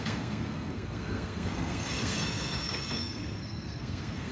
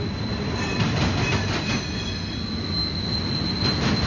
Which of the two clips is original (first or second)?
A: second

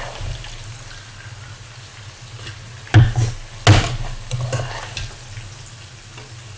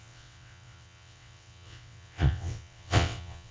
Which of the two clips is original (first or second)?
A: first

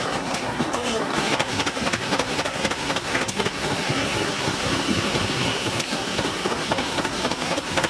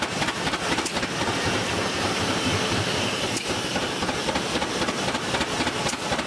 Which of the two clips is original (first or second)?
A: second